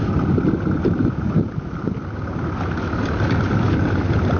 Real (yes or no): yes